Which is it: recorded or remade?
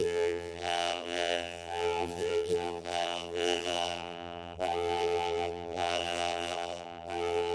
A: remade